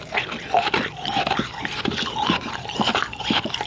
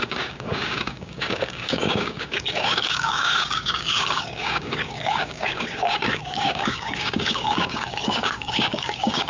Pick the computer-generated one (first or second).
second